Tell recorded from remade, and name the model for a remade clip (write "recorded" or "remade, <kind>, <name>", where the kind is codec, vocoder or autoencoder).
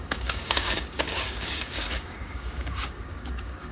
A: remade, codec, DAC